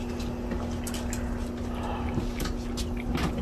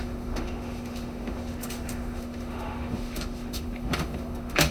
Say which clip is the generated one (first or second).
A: second